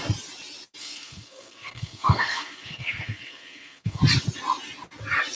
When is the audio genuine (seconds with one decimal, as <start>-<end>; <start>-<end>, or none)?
0.0-0.8; 4.0-5.3